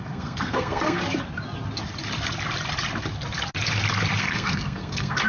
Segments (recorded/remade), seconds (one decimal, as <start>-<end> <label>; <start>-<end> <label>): 0.0-1.0 remade; 1.0-4.2 recorded; 4.2-5.3 remade